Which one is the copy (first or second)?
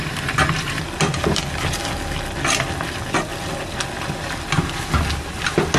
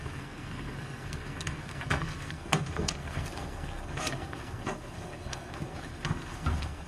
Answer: second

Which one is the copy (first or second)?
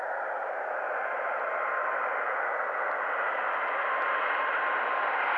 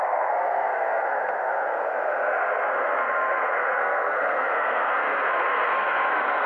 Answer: second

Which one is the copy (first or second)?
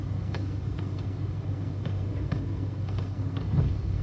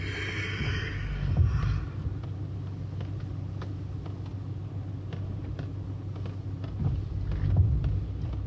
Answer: first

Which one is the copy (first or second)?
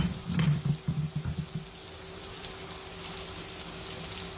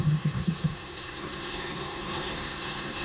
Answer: second